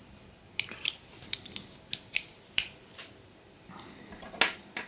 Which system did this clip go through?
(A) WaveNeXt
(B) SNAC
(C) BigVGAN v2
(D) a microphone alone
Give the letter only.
D